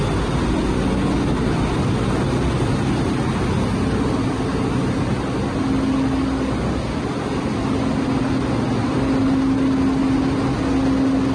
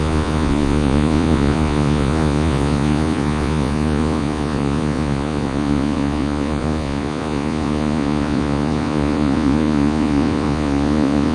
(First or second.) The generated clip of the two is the second